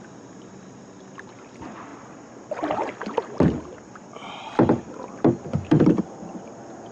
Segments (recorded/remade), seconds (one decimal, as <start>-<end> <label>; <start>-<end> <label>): 0.0-6.9 recorded